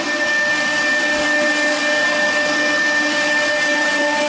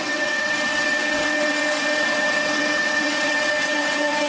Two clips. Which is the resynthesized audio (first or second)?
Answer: second